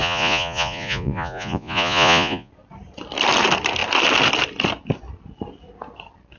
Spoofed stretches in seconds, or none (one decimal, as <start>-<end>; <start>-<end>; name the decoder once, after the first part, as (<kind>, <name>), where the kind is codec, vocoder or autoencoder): 0.0-2.5 (vocoder, Vocos)